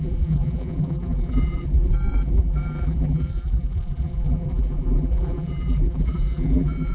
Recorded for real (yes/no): no